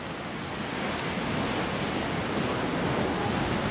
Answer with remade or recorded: recorded